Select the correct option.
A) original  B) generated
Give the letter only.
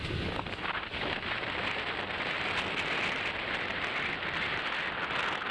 A